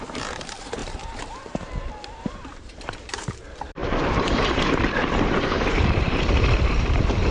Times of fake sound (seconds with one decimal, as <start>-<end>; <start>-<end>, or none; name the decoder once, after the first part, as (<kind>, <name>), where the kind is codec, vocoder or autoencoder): 0.0-7.3 (vocoder, BigVGAN v2)